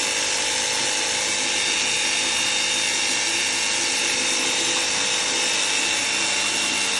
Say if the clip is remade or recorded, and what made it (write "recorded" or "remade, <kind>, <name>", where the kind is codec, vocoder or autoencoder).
recorded